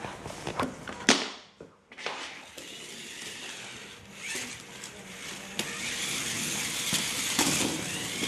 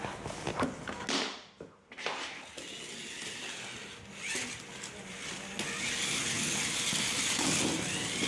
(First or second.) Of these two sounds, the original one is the second